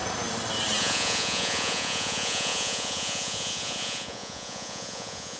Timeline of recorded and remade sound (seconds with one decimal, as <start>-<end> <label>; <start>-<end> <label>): 0.0-0.8 recorded; 0.8-5.4 remade